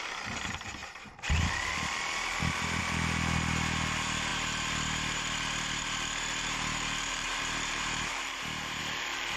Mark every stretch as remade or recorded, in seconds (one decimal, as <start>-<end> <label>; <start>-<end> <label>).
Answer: 0.0-4.3 recorded; 4.3-8.8 remade; 8.8-9.4 recorded